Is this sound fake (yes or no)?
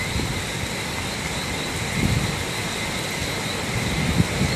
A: no